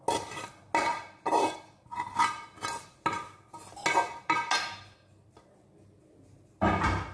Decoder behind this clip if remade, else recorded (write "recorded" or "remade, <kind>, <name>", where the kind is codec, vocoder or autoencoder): recorded